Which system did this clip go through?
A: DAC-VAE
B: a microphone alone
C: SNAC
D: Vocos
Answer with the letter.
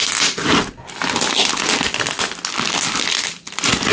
B